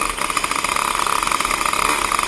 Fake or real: real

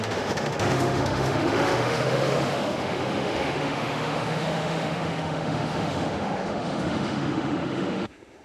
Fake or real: fake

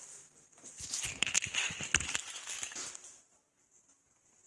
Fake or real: real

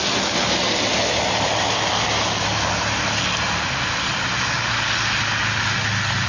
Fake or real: real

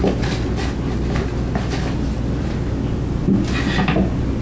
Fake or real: real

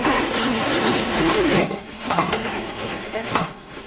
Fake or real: fake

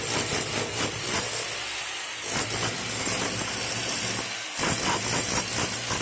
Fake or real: real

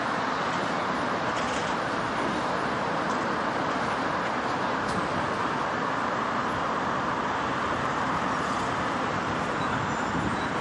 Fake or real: fake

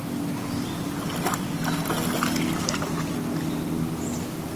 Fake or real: real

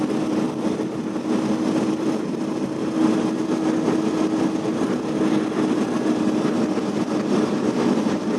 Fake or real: real